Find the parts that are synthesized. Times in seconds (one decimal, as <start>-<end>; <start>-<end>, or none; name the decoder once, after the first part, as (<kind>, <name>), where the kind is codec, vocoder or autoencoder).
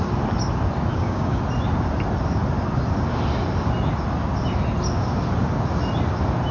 0.9-1.4 (codec, DAC)